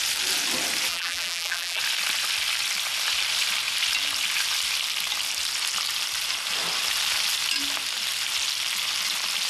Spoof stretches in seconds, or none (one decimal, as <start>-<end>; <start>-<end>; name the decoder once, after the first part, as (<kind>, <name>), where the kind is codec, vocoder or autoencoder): 0.9-1.8 (vocoder, BigVGAN v2)